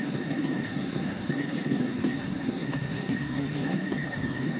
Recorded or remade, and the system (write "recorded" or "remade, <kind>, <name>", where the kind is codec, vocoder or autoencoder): remade, codec, SNAC